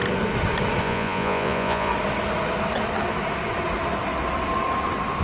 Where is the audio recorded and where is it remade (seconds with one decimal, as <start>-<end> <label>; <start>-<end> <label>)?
0.0-0.8 recorded; 0.8-1.9 remade; 1.9-5.2 recorded